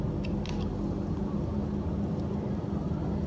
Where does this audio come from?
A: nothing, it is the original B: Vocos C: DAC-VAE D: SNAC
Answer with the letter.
A